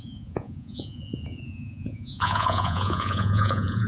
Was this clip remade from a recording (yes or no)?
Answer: yes